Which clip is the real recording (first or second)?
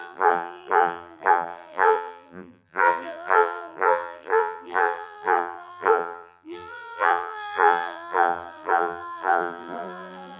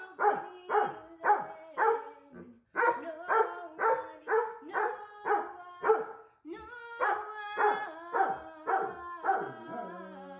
second